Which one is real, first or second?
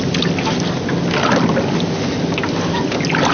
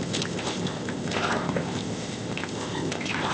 first